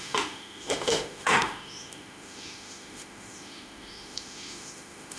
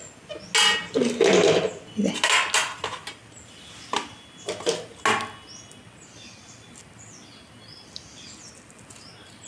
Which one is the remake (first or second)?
first